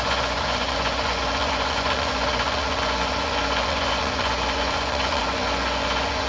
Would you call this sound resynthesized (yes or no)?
yes